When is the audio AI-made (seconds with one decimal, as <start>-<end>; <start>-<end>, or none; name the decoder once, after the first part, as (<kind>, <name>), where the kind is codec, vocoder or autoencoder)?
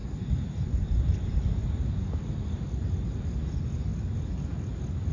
none